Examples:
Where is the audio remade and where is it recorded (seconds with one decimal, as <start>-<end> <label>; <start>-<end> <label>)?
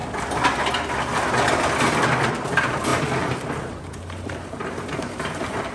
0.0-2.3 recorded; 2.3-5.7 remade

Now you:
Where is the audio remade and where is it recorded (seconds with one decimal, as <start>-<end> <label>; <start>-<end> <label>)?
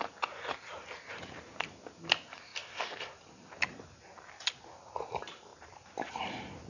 0.0-5.5 recorded; 5.5-6.1 remade; 6.1-6.7 recorded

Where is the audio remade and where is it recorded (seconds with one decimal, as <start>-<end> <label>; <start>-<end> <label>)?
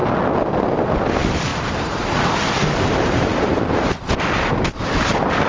0.0-1.5 recorded; 1.5-4.8 remade; 4.8-5.5 recorded